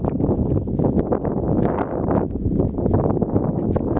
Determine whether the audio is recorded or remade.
recorded